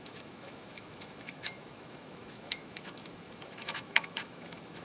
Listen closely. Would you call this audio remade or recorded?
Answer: remade